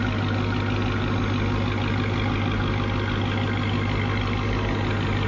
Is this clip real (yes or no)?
yes